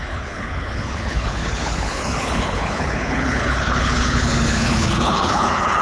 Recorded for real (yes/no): no